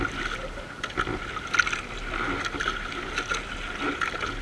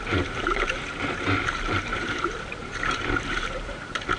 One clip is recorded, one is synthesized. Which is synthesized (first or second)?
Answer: second